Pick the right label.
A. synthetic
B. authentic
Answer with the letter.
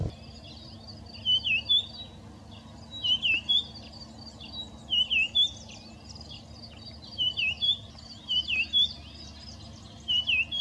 B